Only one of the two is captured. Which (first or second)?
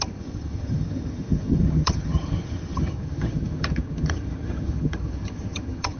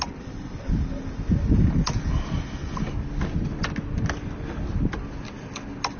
second